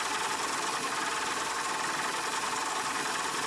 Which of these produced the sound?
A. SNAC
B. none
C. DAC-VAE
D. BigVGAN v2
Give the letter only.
B